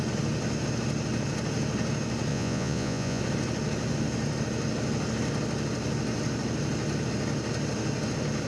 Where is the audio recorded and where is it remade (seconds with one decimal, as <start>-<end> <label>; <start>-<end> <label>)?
0.0-2.3 recorded; 2.3-3.2 remade; 3.2-8.5 recorded